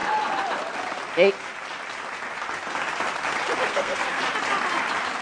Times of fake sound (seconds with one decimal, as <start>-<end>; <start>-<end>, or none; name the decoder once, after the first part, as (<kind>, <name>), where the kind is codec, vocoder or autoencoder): 3.7-4.2 (codec, SNAC)